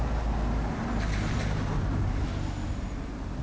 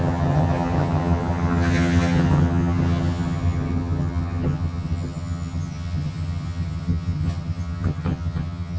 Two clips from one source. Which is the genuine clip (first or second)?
first